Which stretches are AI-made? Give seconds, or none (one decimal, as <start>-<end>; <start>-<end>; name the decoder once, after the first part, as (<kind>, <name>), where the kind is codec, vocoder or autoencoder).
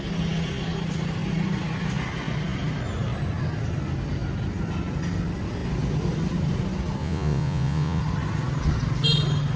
7.0-8.0 (vocoder, Vocos)